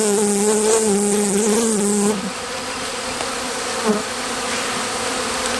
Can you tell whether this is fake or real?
real